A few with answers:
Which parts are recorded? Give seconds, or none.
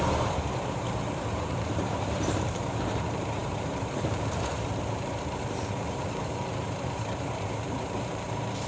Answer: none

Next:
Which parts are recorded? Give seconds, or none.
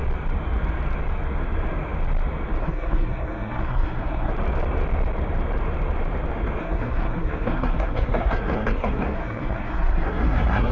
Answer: 0.0-2.6; 4.3-6.6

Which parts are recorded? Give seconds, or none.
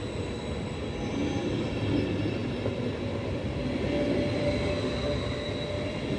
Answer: 0.0-6.2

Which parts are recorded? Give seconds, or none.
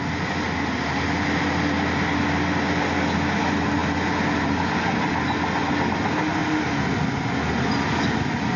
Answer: 0.0-8.6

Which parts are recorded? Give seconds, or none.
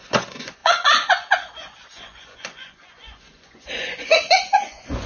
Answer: none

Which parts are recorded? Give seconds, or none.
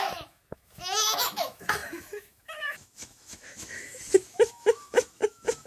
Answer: none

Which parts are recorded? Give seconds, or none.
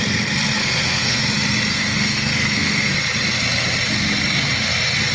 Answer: 0.0-0.6; 1.2-1.7; 2.9-5.1